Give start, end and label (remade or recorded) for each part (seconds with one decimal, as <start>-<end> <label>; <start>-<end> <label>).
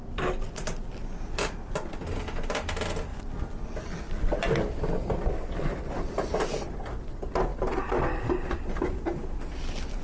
0.0-10.0 recorded